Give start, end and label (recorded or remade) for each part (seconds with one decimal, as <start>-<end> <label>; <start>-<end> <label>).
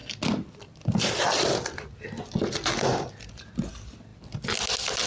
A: 0.0-5.1 recorded